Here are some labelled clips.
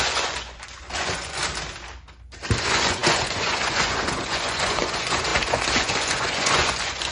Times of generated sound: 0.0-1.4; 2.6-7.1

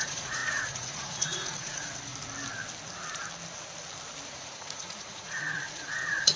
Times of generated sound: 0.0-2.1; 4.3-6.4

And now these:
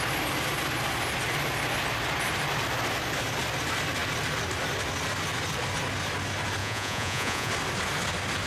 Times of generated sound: 6.6-7.5